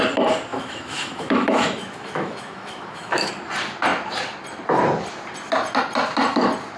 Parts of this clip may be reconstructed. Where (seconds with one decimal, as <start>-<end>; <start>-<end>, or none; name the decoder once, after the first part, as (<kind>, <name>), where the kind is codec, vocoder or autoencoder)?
0.5-3.3 (autoencoder, DAC-VAE)